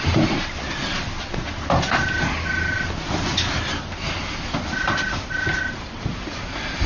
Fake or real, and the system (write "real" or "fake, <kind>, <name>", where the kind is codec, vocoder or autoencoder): real